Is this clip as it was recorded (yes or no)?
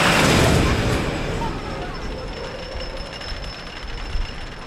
yes